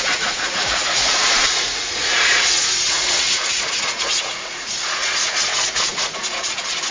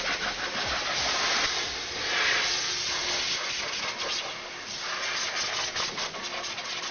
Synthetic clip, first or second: first